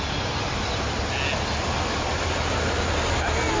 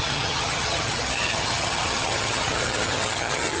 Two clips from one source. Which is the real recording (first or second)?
first